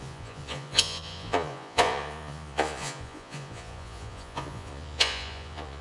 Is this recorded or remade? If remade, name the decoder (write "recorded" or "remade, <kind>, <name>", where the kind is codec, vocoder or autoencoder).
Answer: remade, vocoder, Vocos